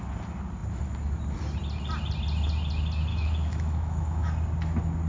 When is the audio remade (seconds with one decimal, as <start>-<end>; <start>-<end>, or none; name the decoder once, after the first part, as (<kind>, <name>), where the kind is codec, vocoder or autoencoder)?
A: 3.1-4.3 (autoencoder, DAC-VAE)